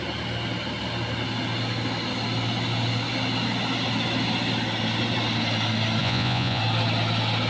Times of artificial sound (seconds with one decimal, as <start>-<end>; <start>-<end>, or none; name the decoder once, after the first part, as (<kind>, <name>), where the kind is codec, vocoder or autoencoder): 6.0-6.6 (vocoder, Vocos)